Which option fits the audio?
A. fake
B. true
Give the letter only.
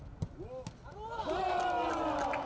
B